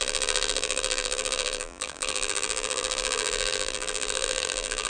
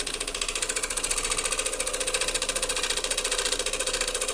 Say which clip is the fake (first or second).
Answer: first